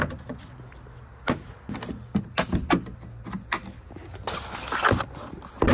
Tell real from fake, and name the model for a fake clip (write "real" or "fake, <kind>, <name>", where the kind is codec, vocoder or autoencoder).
real